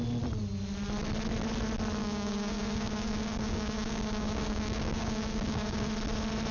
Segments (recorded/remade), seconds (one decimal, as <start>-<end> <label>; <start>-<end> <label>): 0.0-2.0 recorded; 2.0-5.9 remade; 5.9-6.5 recorded

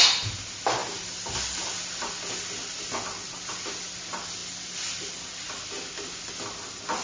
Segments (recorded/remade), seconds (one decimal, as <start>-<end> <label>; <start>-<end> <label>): 0.0-7.0 recorded

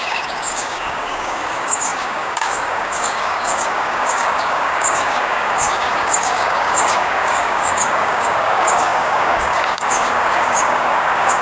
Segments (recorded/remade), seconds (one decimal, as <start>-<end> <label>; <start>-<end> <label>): 0.0-11.4 remade